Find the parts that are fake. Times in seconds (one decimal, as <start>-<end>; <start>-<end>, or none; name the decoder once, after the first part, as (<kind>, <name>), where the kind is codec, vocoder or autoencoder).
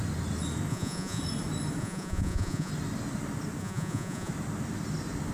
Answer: 0.7-1.2 (vocoder, Vocos); 1.8-2.7; 3.6-4.3